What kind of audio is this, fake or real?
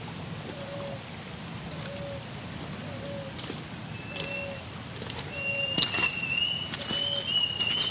real